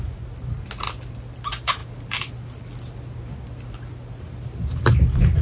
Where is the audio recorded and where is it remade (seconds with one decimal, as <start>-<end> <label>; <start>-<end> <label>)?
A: 0.0-5.4 recorded